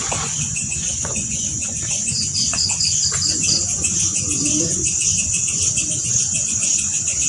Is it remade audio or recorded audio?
remade